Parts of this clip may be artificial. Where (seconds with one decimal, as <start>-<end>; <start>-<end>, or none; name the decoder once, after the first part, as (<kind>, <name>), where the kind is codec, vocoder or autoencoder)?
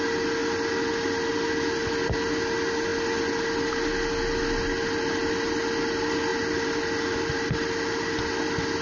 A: none